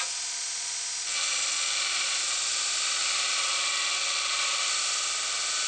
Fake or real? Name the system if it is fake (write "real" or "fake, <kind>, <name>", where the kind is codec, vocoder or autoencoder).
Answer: real